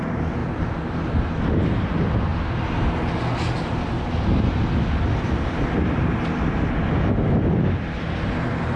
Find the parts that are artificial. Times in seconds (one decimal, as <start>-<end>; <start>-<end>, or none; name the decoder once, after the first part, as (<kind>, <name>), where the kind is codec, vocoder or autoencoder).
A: none